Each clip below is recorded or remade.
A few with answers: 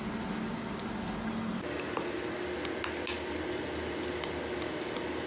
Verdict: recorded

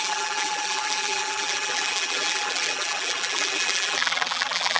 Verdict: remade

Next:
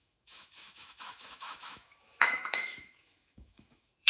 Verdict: remade